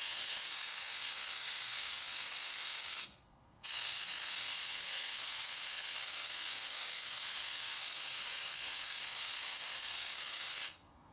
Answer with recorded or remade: remade